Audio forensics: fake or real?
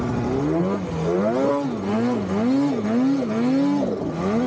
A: real